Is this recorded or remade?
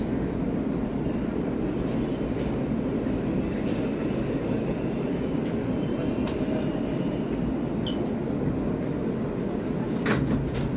recorded